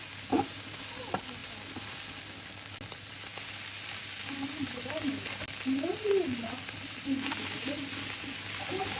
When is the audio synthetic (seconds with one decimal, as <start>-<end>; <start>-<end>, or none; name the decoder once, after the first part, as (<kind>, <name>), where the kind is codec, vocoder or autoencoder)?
none